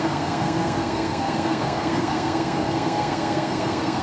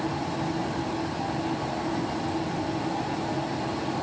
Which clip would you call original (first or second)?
second